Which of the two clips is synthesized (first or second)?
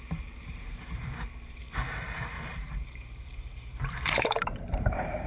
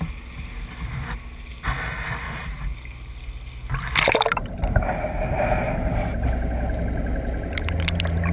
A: first